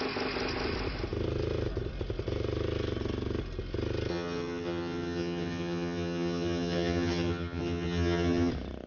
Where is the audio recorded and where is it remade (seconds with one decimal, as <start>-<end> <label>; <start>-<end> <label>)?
0.0-4.1 recorded; 4.1-8.5 remade; 8.5-8.9 recorded